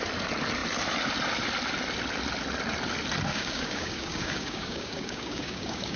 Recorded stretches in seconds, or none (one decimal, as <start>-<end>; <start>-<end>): 0.0-3.3